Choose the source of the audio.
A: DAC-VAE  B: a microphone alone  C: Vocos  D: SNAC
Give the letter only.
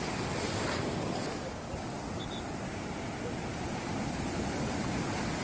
B